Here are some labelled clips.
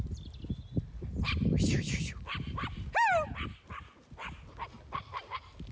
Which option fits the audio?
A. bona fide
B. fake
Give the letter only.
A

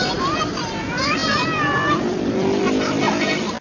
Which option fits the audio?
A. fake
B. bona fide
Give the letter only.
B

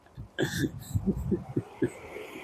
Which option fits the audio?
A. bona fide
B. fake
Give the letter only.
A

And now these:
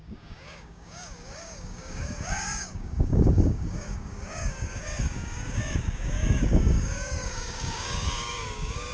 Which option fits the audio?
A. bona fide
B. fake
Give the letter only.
B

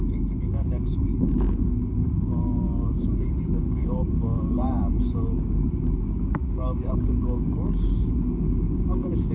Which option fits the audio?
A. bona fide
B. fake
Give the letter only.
B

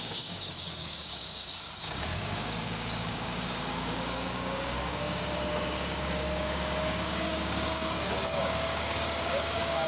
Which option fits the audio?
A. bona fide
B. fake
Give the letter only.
B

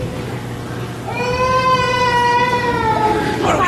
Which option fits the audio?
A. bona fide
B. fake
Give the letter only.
A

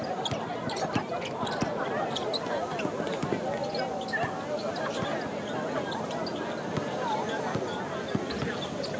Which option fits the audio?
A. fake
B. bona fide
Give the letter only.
B